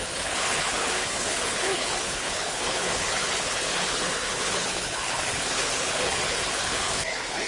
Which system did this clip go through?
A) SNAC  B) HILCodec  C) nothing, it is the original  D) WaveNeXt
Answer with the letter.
B